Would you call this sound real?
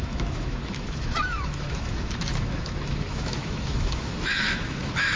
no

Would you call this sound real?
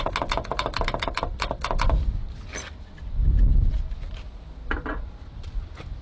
yes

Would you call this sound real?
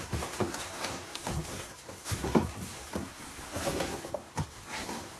no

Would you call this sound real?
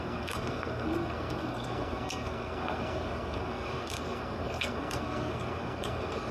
no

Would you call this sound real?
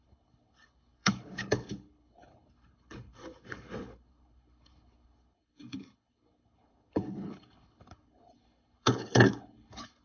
no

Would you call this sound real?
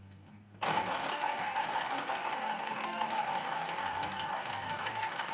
no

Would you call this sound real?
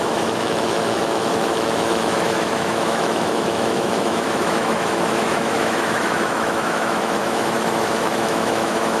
no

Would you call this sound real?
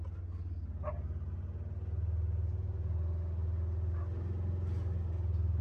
yes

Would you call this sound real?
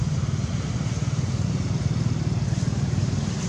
yes